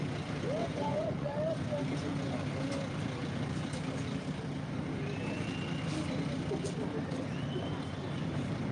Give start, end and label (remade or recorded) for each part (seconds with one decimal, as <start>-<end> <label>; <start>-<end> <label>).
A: 0.0-0.6 recorded; 0.6-1.3 remade; 1.3-8.7 recorded